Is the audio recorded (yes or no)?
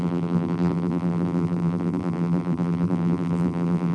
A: no